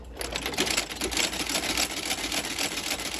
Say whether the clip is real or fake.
real